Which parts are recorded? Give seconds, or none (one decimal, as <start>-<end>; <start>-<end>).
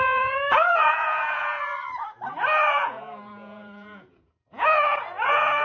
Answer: 1.7-2.7